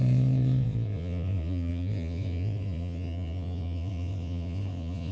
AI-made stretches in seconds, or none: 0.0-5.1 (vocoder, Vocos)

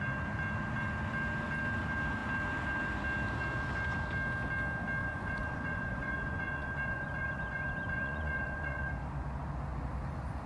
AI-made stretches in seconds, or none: 5.0-8.9 (vocoder, Vocos)

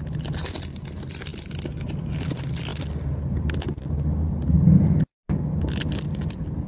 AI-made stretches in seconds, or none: none

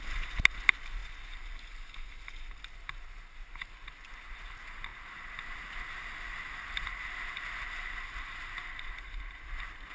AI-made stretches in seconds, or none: none

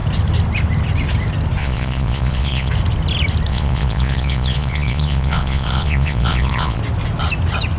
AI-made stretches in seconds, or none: 1.6-2.7 (vocoder, Vocos); 3.5-6.8

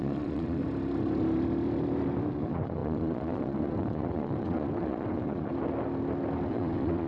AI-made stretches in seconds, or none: 0.0-0.6 (vocoder, Vocos); 2.3-5.5; 6.5-7.1

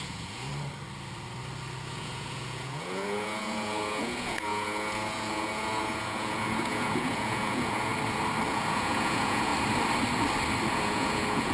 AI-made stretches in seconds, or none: 0.0-0.5 (vocoder, Vocos); 1.9-7.9; 8.5-9.5; 10.7-11.5